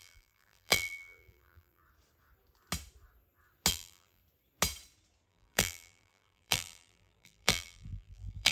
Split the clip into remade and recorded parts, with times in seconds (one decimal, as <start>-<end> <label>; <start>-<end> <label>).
0.0-1.8 remade; 1.8-3.7 recorded; 3.7-4.2 remade; 4.2-5.3 recorded; 5.3-8.5 remade